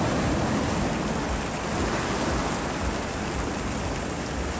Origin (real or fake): real